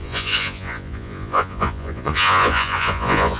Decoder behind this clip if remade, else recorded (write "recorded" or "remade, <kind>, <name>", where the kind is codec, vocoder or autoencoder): remade, vocoder, Vocos